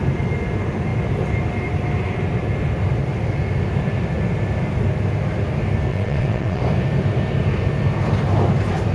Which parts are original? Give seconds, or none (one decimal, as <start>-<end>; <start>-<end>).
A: 0.0-5.9; 6.6-8.9